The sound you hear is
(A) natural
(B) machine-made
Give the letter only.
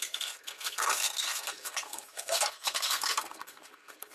B